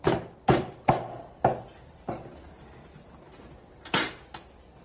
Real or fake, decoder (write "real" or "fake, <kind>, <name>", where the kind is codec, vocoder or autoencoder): real